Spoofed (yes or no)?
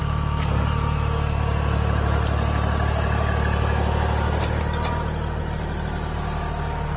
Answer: no